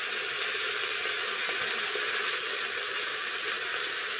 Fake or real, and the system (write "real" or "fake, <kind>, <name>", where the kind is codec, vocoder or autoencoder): fake, vocoder, BigVGAN v2